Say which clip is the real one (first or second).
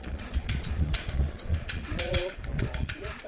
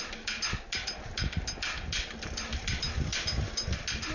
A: second